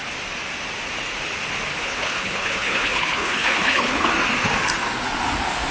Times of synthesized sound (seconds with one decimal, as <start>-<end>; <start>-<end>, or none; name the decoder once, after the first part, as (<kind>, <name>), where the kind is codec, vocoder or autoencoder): 1.7-4.1 (codec, HILCodec)